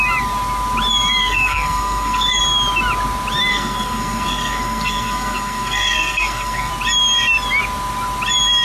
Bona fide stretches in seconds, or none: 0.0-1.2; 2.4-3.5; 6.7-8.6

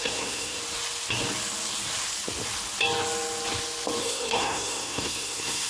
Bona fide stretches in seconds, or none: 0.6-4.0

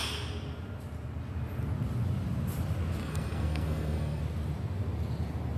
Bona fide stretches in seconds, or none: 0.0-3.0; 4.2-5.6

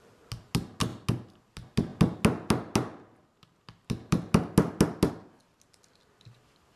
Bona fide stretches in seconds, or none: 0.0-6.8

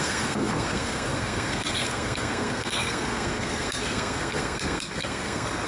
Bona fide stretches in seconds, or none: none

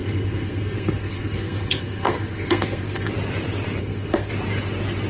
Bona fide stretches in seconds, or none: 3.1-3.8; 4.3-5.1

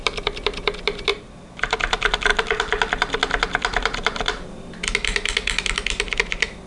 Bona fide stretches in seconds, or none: 0.0-6.7

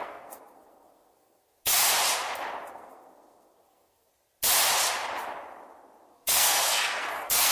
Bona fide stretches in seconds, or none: 1.8-2.7; 4.1-6.1